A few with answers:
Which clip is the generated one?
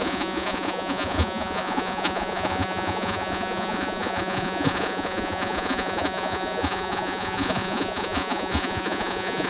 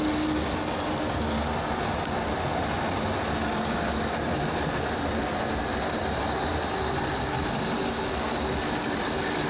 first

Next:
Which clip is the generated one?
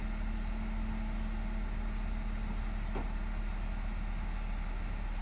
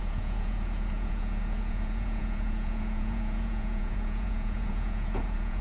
second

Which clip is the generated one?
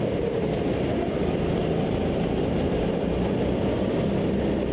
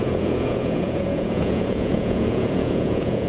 second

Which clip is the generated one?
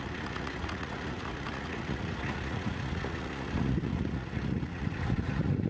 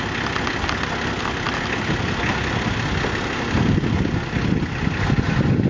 first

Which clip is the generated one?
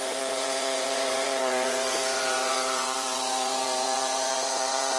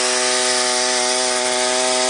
first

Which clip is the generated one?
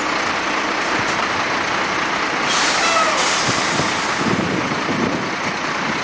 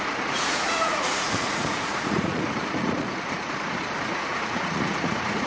second